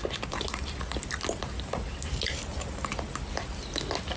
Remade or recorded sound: recorded